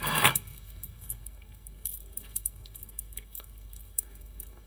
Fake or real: fake